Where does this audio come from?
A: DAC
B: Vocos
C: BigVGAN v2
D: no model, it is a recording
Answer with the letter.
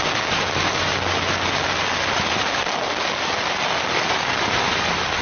D